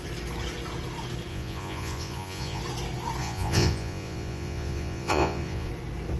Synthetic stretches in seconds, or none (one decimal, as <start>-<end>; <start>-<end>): 1.3-2.6; 3.2-5.7